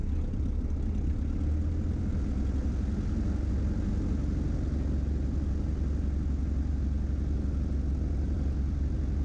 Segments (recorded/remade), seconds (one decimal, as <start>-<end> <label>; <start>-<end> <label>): 0.0-9.2 recorded